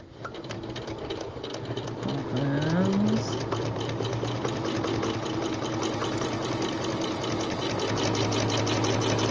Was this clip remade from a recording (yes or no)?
no